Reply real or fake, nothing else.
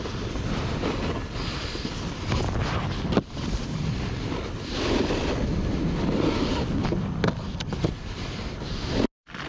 real